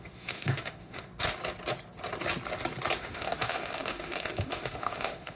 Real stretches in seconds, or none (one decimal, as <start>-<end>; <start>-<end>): 1.1-3.0